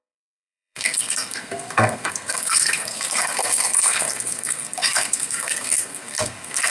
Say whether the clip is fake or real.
fake